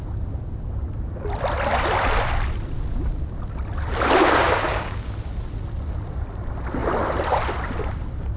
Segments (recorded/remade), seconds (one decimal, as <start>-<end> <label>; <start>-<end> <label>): 0.0-4.2 recorded; 4.2-5.1 remade; 5.1-8.4 recorded